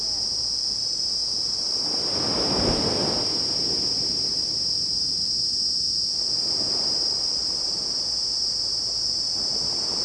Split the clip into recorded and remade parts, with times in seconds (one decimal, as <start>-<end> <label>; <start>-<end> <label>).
0.0-10.0 recorded